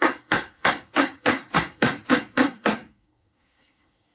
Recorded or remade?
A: remade